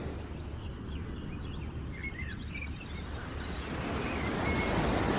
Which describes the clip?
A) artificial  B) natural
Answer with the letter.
B